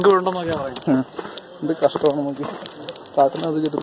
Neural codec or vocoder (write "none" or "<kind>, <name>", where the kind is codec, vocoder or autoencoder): none